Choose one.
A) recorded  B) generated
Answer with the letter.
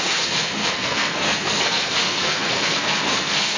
B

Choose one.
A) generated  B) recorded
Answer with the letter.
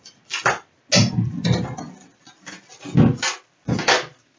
B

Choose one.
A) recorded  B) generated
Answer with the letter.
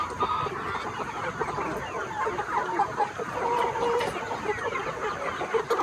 A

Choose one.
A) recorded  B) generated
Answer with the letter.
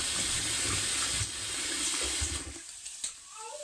A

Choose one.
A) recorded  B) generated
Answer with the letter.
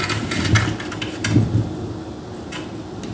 A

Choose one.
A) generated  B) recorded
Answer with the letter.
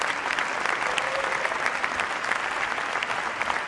B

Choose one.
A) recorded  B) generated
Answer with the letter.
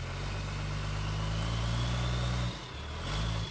A